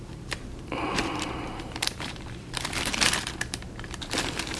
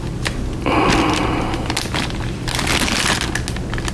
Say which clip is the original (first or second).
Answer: second